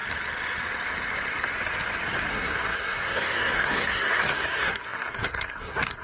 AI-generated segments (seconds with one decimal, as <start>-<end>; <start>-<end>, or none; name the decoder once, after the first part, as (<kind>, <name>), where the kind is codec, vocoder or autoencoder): 2.3-6.0 (codec, SNAC)